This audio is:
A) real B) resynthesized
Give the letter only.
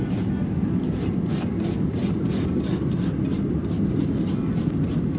A